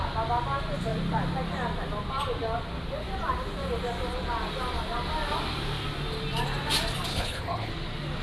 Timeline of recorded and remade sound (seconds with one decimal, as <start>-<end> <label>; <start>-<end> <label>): 0.0-7.1 recorded; 7.1-7.7 remade; 7.7-8.2 recorded